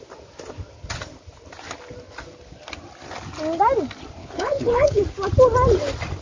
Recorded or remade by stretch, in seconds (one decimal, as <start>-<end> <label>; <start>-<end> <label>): 0.0-4.2 recorded; 4.2-5.0 remade; 5.0-6.2 recorded